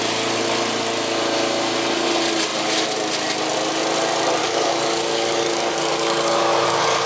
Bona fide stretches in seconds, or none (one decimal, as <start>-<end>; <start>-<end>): 0.0-4.4